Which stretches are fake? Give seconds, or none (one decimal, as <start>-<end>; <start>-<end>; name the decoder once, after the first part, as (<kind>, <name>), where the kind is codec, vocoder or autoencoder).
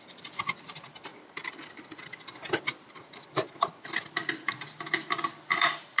none